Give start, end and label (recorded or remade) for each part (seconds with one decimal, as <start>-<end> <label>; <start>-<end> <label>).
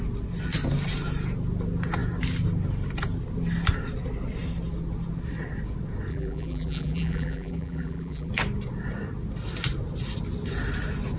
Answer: 0.0-6.1 recorded; 6.1-8.3 remade; 8.3-11.2 recorded